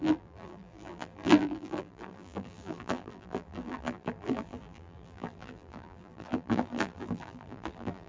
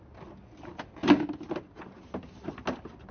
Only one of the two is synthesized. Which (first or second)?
first